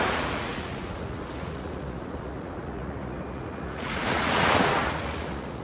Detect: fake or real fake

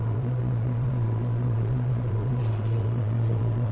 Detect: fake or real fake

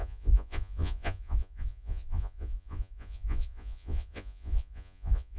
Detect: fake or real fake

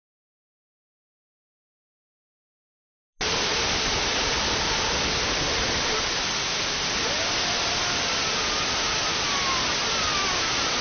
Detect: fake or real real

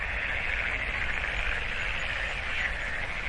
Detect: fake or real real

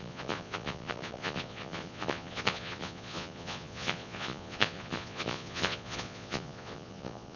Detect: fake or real fake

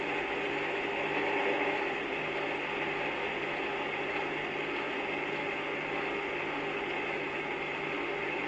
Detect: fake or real real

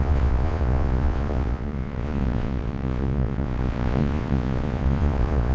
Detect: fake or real fake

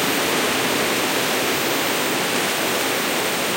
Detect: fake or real real